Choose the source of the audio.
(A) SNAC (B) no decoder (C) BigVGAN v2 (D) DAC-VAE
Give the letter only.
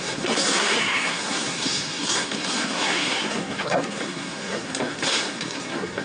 A